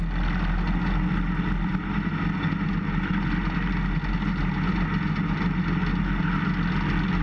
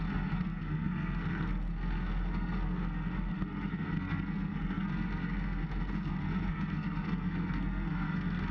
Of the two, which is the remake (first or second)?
second